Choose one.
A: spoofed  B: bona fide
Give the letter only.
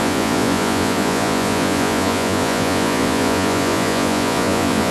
A